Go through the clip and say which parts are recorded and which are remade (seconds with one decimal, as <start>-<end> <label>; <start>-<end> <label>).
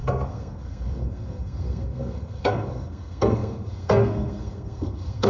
0.0-5.3 remade